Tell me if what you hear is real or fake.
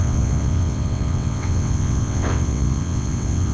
fake